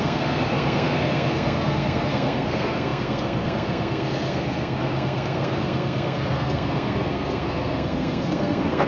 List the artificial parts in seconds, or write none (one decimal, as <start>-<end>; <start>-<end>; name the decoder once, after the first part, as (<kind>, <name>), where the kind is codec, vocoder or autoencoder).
0.0-8.9 (codec, SNAC)